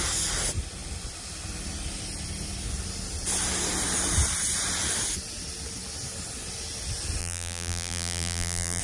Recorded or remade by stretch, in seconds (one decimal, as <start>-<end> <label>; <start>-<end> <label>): 0.0-7.2 recorded; 7.2-8.8 remade